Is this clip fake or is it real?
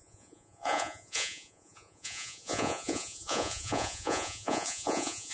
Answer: fake